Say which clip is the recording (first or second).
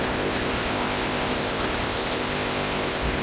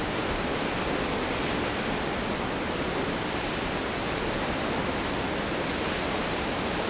second